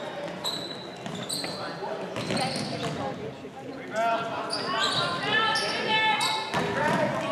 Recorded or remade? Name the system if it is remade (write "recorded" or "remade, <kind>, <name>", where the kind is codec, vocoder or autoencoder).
recorded